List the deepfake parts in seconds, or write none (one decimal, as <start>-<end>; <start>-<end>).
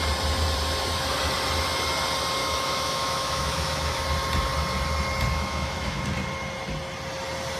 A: 2.4-4.0; 5.3-6.0